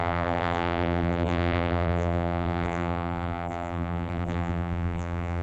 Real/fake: fake